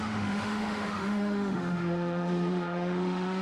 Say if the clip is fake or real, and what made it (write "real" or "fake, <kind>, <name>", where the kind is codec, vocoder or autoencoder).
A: fake, autoencoder, DAC-VAE